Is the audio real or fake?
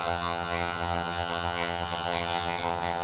fake